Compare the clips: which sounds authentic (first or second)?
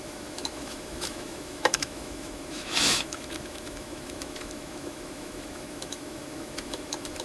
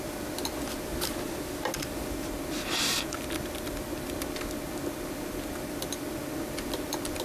second